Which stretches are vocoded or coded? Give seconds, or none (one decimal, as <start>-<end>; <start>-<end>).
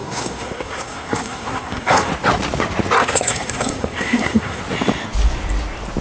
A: 0.0-2.1; 3.0-4.6